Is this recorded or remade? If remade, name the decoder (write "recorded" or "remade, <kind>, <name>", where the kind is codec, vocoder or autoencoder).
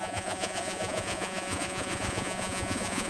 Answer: remade, vocoder, Vocos